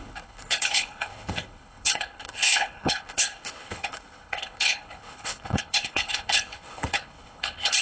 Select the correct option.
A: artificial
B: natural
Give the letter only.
A